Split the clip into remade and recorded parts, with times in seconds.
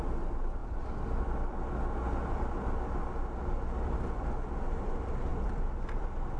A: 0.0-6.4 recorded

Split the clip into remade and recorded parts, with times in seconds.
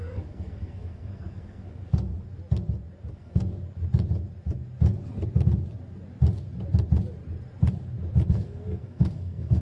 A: 0.0-2.1 remade; 2.1-3.1 recorded; 3.1-3.5 remade; 3.5-8.3 recorded; 8.3-9.6 remade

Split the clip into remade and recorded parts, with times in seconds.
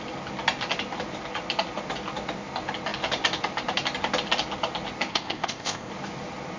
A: 0.0-5.1 recorded; 5.1-5.9 remade; 5.9-6.6 recorded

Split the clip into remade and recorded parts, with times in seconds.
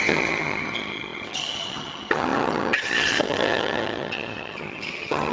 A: 0.0-5.3 remade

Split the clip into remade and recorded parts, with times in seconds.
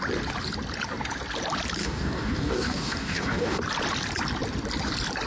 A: 0.0-1.8 recorded; 1.8-3.6 remade; 3.6-5.3 recorded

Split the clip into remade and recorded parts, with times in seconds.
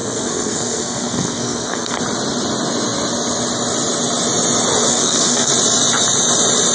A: 0.0-2.0 remade; 2.0-4.9 recorded; 4.9-5.5 remade; 5.5-6.7 recorded